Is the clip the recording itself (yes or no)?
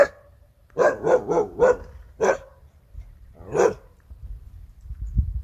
no